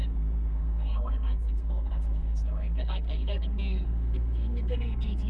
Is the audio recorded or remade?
remade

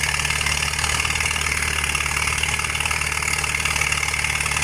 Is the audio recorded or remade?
recorded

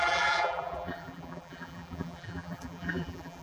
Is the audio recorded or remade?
remade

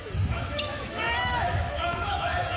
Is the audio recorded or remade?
remade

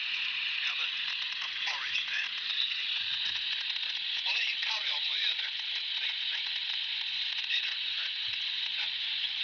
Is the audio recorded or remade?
remade